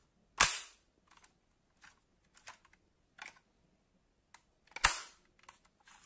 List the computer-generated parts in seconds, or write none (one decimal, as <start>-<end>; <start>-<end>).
none